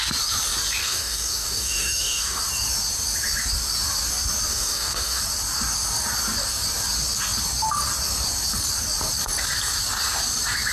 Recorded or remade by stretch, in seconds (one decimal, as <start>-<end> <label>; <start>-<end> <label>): 0.0-0.8 recorded; 0.8-2.4 remade; 2.4-4.5 recorded; 4.5-5.2 remade; 5.2-10.7 recorded